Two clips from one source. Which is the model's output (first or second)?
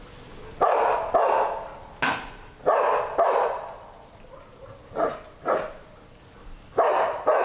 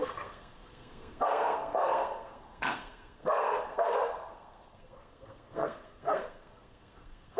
second